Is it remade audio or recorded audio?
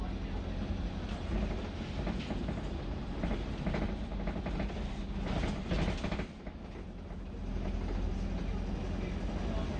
recorded